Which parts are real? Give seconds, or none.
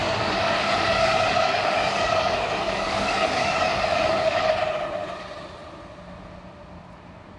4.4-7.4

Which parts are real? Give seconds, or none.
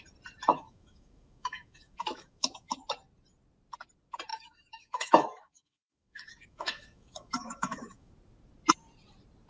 0.0-0.5; 2.8-4.3; 8.1-9.5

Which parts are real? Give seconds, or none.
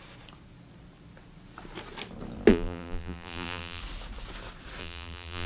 0.0-2.5; 3.8-4.8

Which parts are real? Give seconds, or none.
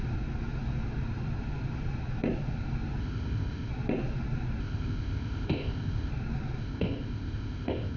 0.0-3.0; 3.7-4.6; 6.1-6.6